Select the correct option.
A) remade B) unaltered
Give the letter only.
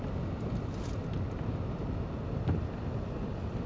B